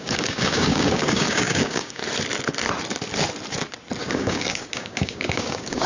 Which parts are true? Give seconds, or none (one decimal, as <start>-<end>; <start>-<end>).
2.0-4.0